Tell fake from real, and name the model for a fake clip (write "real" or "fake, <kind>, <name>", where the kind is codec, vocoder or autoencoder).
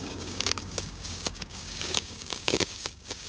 fake, codec, DAC